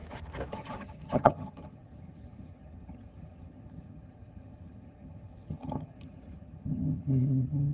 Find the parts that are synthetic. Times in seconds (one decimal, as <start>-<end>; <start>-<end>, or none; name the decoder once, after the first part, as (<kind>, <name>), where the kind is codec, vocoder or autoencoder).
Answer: 0.5-7.7 (vocoder, HiFi-GAN)